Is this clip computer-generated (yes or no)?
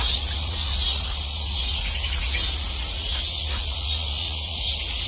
yes